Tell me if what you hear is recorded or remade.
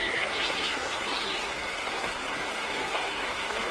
remade